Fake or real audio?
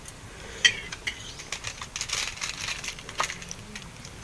real